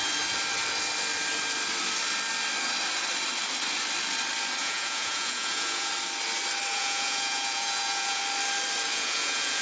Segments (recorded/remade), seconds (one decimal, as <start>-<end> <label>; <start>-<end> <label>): 0.0-4.6 recorded; 4.6-5.9 remade; 5.9-6.7 recorded; 6.7-8.2 remade; 8.2-8.9 recorded; 8.9-9.6 remade